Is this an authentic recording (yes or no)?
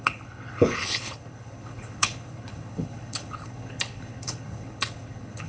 no